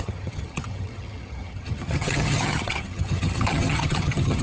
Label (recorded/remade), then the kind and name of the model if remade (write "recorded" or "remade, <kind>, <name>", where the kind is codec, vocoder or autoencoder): remade, vocoder, HiFi-GAN